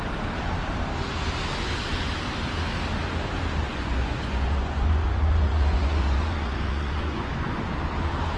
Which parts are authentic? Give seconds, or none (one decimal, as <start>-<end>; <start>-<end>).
0.0-3.7; 7.6-8.4